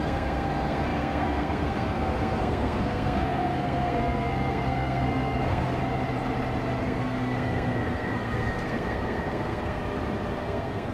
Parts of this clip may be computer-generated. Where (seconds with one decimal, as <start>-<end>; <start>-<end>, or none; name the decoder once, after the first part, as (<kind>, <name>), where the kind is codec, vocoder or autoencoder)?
0.0-5.8 (codec, SNAC); 6.8-9.8; 10.4-10.9